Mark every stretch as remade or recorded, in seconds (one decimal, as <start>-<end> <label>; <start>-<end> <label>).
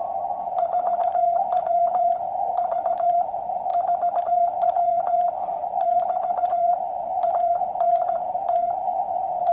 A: 0.0-3.7 remade; 3.7-4.2 recorded; 4.2-9.5 remade